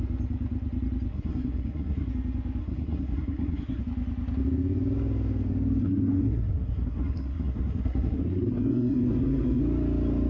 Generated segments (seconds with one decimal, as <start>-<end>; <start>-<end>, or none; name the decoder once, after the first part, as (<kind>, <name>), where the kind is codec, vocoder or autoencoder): 1.1-2.1 (codec, SNAC); 2.6-3.8; 5.8-9.6